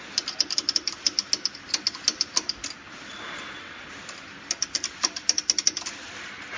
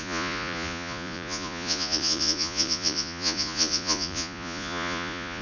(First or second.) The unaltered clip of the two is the first